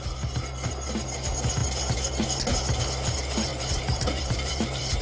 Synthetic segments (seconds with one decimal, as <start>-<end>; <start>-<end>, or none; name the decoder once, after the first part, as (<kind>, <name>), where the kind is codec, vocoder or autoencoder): 3.5-5.0 (vocoder, BigVGAN v2)